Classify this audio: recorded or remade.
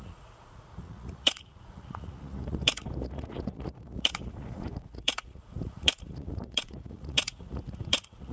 remade